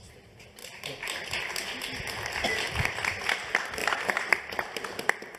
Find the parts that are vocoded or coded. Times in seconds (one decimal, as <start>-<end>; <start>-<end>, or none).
3.8-4.3